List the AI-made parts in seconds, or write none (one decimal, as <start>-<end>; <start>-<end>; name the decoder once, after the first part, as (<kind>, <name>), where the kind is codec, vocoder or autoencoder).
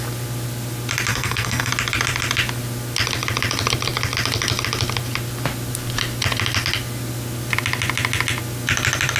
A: 1.1-1.7 (codec, SNAC)